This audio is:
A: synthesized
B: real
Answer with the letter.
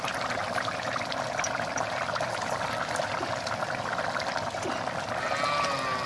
B